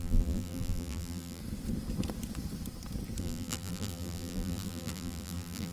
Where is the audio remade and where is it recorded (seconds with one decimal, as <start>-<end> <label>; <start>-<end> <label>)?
0.0-1.4 remade; 1.4-3.2 recorded; 3.2-5.7 remade